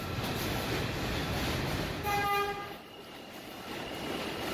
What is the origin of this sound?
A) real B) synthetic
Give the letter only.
A